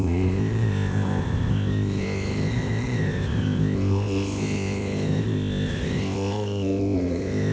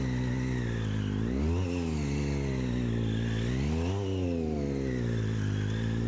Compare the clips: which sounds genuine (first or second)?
second